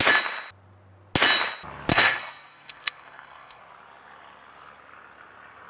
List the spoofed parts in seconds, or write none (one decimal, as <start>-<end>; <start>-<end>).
1.9-3.6